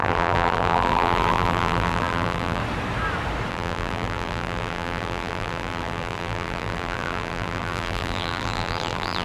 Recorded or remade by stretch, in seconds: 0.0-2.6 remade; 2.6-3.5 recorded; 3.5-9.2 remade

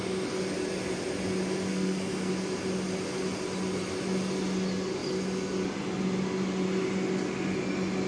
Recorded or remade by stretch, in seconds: 0.0-1.7 recorded; 1.7-2.3 remade; 2.3-8.1 recorded

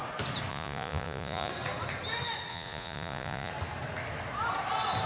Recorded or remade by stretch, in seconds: 0.0-0.5 recorded; 0.5-1.5 remade; 1.5-2.5 recorded; 2.5-3.5 remade; 3.5-5.1 recorded